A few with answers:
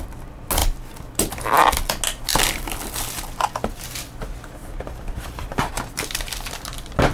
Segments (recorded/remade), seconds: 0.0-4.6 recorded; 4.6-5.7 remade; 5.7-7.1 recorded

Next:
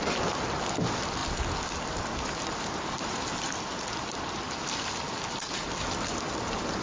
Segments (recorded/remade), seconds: 0.0-6.8 recorded

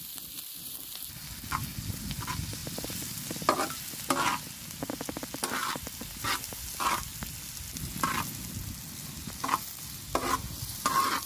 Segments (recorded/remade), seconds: 0.0-11.3 recorded

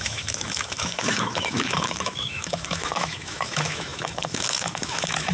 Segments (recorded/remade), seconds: 0.0-5.3 remade